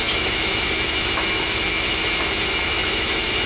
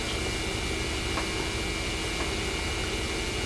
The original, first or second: second